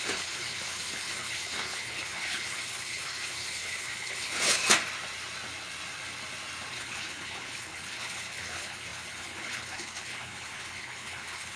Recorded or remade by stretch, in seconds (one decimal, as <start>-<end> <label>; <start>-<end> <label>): 0.0-4.6 remade; 4.6-6.7 recorded; 6.7-11.6 remade